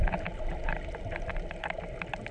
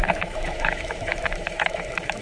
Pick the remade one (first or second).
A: second